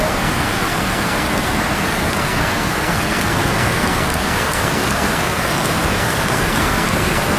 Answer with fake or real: fake